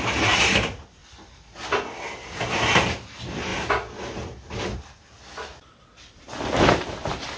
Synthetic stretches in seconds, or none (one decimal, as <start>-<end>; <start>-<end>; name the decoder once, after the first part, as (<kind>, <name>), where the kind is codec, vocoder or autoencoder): 0.0-1.0 (vocoder, BigVGAN v2); 2.4-3.5; 6.6-7.4